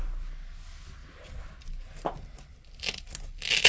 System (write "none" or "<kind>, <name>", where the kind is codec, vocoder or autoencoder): none